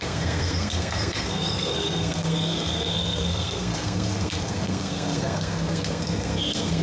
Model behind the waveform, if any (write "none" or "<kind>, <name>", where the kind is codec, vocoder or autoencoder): codec, SNAC